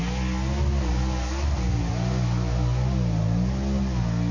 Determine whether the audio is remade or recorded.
recorded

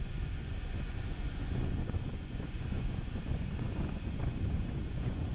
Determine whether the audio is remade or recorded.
remade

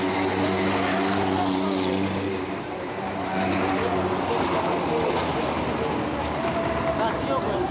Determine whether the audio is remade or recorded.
recorded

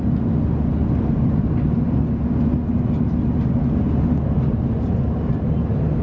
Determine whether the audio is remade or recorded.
recorded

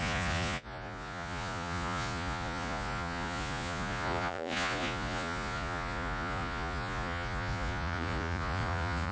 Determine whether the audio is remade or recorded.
remade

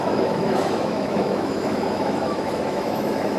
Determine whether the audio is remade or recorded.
remade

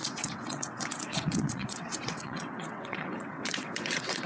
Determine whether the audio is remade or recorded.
remade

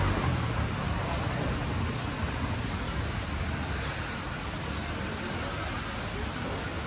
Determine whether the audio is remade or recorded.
recorded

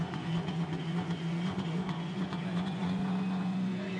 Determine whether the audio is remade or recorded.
remade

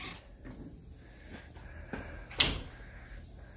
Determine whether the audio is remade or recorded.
recorded